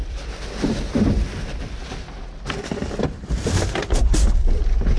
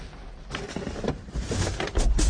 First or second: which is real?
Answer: second